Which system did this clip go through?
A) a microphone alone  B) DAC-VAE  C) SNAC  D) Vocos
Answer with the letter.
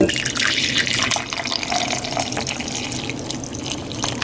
A